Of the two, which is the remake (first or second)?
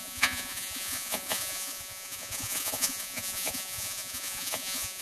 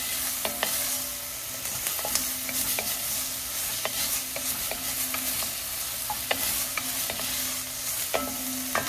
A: first